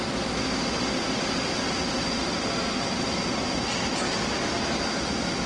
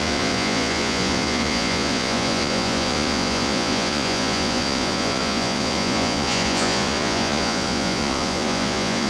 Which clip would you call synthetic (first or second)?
second